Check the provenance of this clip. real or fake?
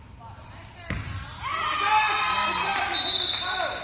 real